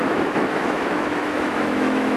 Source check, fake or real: fake